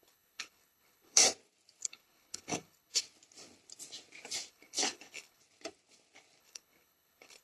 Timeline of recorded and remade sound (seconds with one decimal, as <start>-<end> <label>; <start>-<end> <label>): 0.0-1.2 remade; 1.2-1.8 recorded; 1.8-3.0 remade; 3.0-4.5 recorded; 4.5-5.4 remade; 5.4-6.4 recorded; 6.4-7.4 remade